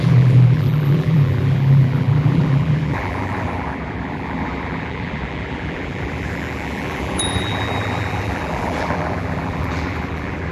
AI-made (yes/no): yes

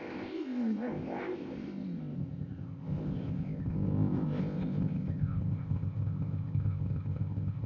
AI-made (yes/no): yes